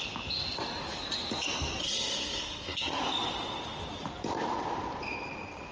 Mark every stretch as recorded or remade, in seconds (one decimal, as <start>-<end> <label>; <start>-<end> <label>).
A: 0.0-1.8 recorded; 1.8-3.0 remade; 3.0-5.7 recorded